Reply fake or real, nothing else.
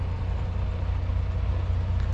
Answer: real